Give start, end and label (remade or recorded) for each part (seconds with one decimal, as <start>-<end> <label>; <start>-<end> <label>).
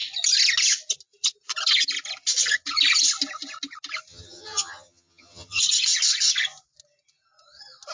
0.0-4.1 recorded; 4.1-5.6 remade; 5.6-7.9 recorded